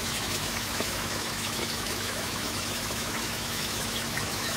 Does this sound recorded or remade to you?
remade